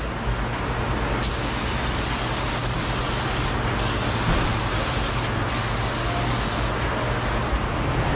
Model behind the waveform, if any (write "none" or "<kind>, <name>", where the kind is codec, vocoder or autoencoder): none